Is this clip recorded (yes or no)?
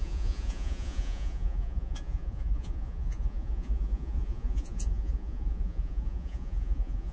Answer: no